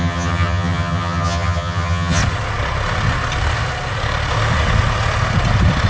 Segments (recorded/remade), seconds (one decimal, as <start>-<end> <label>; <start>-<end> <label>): 0.0-2.2 remade; 2.2-5.9 recorded